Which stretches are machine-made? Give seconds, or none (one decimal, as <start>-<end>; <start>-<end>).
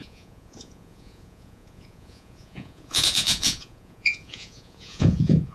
0.0-5.5